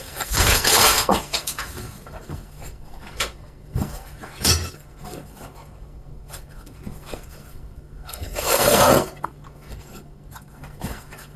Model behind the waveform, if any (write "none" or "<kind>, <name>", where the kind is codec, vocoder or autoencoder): codec, SNAC